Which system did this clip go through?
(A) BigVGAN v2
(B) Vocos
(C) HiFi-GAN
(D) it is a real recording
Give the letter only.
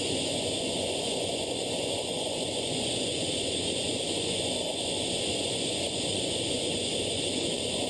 B